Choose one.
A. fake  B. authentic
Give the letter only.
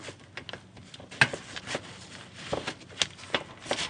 B